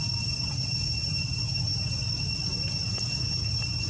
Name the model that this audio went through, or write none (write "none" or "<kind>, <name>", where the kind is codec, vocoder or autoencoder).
none